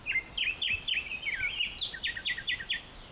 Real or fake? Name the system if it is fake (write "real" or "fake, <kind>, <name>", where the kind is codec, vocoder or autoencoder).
real